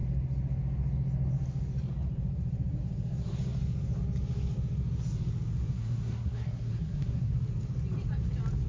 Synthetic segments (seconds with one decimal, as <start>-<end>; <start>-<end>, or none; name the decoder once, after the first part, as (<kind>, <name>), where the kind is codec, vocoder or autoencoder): 5.7-7.3 (codec, SNAC)